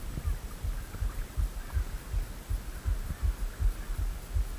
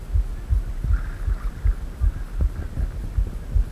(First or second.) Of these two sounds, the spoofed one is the first